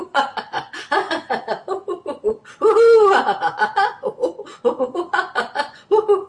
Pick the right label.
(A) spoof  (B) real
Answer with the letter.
A